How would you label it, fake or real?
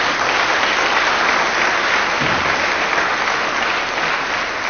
real